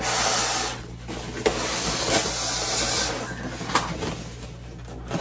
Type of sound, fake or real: real